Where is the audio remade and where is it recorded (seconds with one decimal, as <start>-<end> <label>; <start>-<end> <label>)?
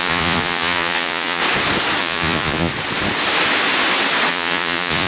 0.0-1.4 remade; 1.4-2.0 recorded; 2.0-2.7 remade; 2.7-4.3 recorded; 4.3-5.1 remade